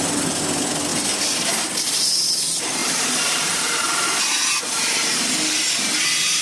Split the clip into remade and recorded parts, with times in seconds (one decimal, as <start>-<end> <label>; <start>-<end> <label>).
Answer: 0.0-2.8 recorded; 2.8-3.8 remade; 3.8-6.4 recorded